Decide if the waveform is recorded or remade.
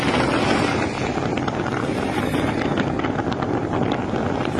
recorded